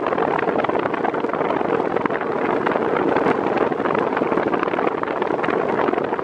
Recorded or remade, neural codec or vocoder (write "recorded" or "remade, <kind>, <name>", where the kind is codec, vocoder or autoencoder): recorded